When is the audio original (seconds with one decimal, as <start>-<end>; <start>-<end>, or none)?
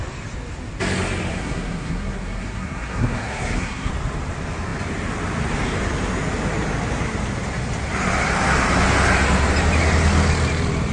0.0-1.3; 3.9-10.9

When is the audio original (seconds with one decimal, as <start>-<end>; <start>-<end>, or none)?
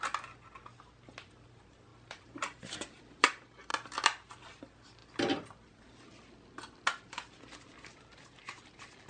0.0-1.9; 3.0-9.1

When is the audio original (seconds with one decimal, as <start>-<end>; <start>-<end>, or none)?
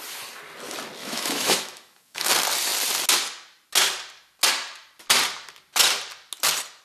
0.0-1.0; 2.3-6.8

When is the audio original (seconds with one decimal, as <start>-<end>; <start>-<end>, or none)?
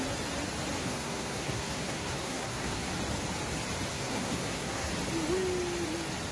0.0-0.8; 2.9-3.9; 4.9-6.3